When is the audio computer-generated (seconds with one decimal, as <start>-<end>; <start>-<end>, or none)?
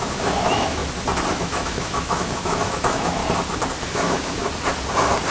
0.0-0.8; 1.3-3.2; 3.9-4.4